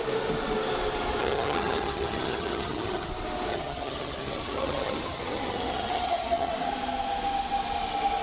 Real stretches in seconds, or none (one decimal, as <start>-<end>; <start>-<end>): 0.0-1.2; 3.1-3.5; 6.5-8.2